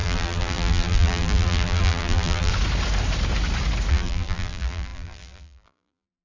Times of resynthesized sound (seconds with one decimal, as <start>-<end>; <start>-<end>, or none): 0.0-2.5; 3.9-6.2